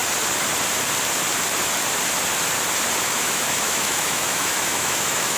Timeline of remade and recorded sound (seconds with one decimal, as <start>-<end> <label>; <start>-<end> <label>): 0.0-3.0 recorded; 3.0-5.4 remade